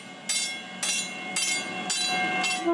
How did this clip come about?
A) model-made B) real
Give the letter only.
B